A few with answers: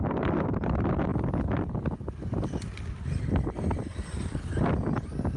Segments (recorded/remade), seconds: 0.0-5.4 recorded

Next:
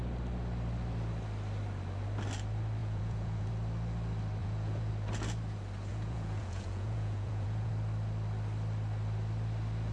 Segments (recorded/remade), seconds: 0.0-2.8 recorded; 2.8-3.5 remade; 3.5-4.4 recorded; 4.4-4.9 remade; 4.9-5.9 recorded; 5.9-7.7 remade; 7.7-9.9 recorded

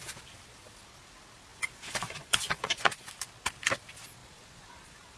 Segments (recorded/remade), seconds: 0.0-1.5 recorded; 1.5-3.1 remade; 3.1-4.2 recorded; 4.2-5.2 remade

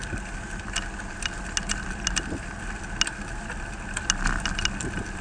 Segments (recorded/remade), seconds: 0.0-5.2 recorded

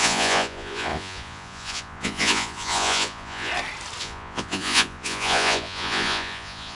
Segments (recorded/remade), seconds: 0.0-3.5 remade; 3.5-4.0 recorded; 4.0-6.8 remade